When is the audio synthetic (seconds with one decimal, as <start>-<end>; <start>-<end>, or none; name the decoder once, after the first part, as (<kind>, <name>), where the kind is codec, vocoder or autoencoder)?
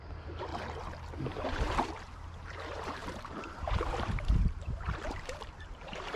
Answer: 0.0-0.5 (vocoder, BigVGAN v2); 1.2-6.2